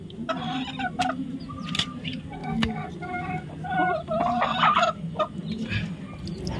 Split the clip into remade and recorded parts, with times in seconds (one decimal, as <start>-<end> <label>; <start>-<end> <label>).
0.0-2.4 recorded; 2.4-2.9 remade; 2.9-6.6 recorded